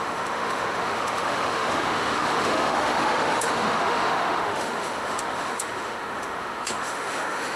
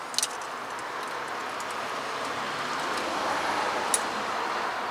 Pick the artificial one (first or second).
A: first